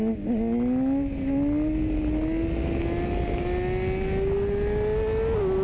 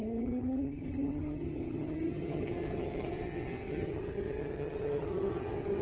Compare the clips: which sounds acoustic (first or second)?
first